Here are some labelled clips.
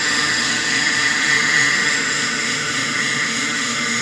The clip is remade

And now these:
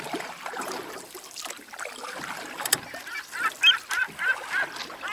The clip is remade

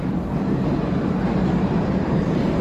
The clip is recorded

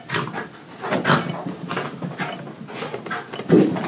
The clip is recorded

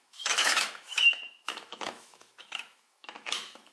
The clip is remade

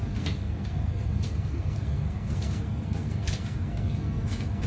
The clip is remade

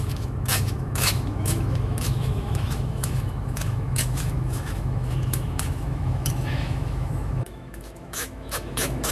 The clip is remade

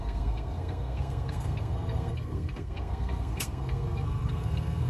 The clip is remade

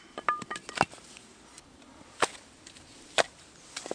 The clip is recorded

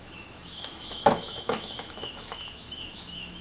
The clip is remade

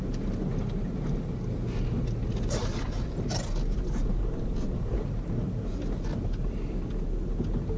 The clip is recorded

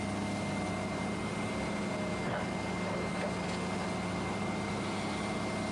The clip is recorded